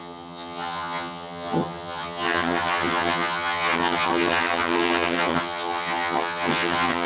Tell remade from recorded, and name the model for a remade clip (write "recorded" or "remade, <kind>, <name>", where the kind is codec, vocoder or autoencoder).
remade, vocoder, HiFi-GAN